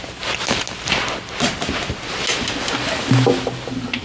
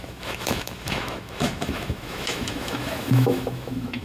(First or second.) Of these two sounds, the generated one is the second